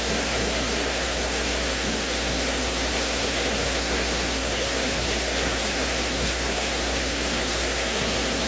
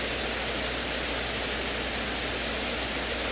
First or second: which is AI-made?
first